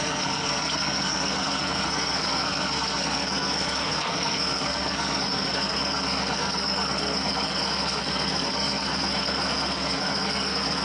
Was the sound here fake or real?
fake